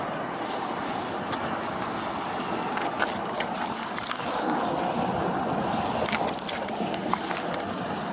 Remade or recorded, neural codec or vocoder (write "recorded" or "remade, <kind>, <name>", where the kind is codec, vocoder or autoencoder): recorded